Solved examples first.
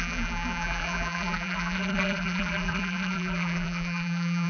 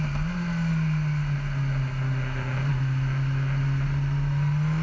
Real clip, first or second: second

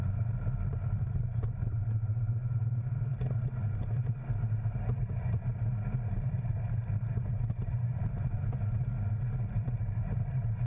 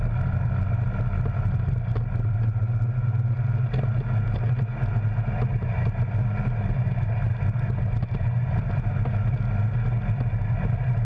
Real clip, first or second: second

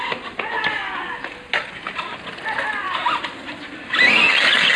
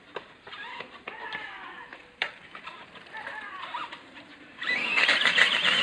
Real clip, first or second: first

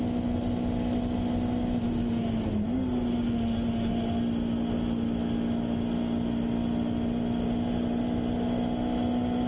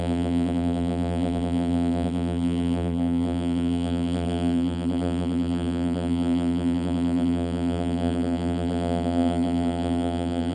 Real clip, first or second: first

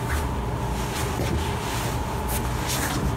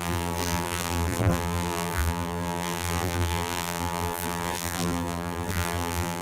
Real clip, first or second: first